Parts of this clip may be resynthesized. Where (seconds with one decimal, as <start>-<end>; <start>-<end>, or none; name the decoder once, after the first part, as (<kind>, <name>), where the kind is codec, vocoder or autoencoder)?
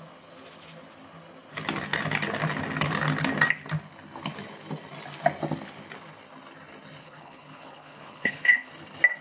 7.0-8.7 (codec, HILCodec)